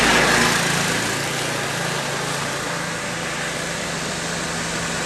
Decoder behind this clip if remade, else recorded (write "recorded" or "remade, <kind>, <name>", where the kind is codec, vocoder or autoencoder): recorded